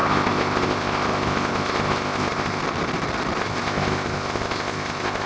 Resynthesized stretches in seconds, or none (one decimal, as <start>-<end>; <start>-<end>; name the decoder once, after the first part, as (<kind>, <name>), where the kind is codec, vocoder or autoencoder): 0.0-2.6 (codec, ZipCodec); 3.4-5.3